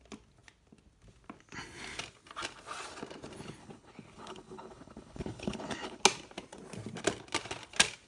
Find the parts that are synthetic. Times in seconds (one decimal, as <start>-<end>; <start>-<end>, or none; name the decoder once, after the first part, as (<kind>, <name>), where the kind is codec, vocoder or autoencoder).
3.6-6.0 (codec, HILCodec)